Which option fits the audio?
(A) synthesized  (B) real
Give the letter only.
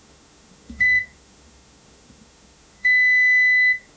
A